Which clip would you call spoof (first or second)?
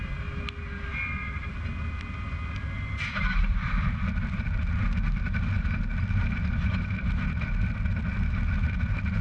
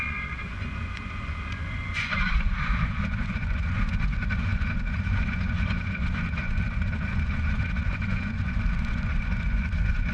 second